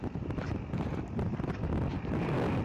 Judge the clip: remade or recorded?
recorded